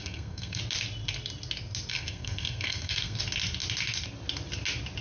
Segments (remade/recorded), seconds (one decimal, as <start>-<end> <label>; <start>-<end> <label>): 0.0-0.6 remade; 0.6-1.9 recorded; 1.9-3.2 remade; 3.2-5.0 recorded